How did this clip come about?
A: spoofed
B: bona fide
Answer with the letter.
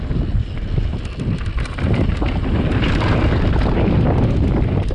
B